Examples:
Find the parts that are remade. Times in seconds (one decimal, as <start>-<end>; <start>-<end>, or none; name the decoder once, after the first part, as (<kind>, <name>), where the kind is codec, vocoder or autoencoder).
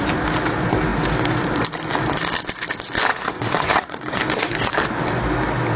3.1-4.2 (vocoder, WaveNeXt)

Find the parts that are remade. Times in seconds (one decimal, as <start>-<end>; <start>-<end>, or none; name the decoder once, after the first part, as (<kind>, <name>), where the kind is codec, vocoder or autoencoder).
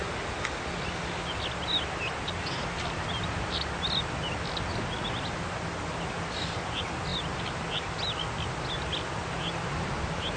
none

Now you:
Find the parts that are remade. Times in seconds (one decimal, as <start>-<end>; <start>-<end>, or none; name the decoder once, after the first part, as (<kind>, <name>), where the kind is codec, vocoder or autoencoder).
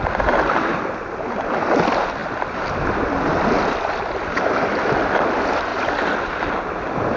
none